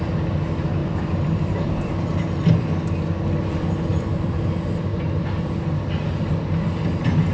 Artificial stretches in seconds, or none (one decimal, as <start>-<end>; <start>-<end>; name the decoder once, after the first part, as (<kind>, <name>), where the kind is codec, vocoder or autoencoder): 0.8-2.2 (vocoder, BigVGAN v2); 3.9-4.4; 4.9-5.6